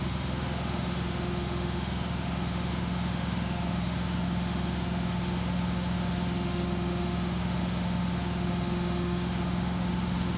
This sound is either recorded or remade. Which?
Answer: remade